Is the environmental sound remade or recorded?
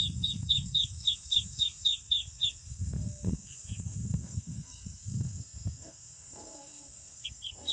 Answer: remade